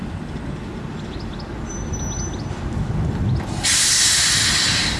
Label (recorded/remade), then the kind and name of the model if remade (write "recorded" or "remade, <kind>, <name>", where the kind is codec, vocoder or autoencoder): recorded